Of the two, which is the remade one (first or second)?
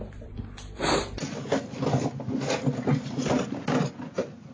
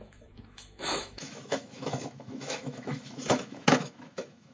second